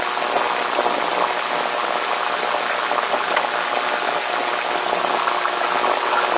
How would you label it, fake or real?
real